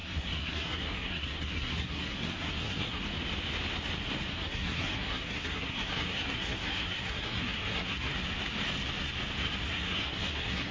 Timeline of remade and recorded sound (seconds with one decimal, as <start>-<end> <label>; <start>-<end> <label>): 0.0-3.0 remade; 3.0-4.3 recorded; 4.3-8.1 remade; 8.1-9.7 recorded; 9.7-10.7 remade